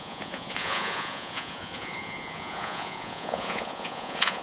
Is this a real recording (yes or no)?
no